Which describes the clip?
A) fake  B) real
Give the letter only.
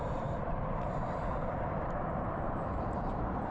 A